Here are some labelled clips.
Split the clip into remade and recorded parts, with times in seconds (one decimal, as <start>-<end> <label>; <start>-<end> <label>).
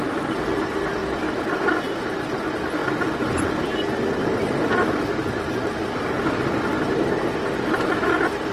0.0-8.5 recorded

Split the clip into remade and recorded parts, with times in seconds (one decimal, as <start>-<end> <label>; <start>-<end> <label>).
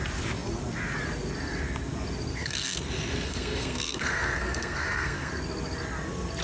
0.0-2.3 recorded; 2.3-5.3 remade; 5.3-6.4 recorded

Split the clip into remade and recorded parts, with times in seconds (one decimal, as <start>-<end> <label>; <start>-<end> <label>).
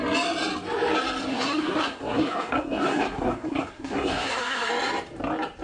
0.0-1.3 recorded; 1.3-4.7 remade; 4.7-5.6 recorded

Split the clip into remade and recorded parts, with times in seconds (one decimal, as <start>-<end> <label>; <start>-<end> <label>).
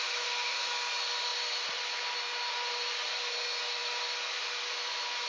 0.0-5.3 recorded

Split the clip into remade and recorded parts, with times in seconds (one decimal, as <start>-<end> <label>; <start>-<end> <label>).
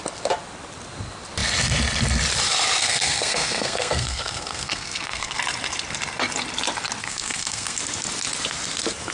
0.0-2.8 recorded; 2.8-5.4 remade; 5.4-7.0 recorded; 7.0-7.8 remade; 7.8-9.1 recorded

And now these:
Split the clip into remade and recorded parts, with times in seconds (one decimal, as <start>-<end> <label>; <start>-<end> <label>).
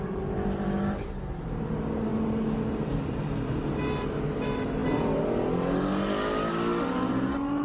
0.0-7.6 recorded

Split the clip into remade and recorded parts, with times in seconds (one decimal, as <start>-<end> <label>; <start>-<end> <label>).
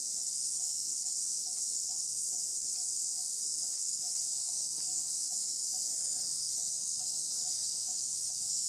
0.0-8.7 remade